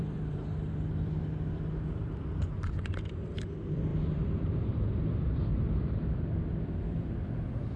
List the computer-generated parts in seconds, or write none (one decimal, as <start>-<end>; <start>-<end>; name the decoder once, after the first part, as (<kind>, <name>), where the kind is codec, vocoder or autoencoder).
0.0-7.8 (vocoder, BigVGAN v2)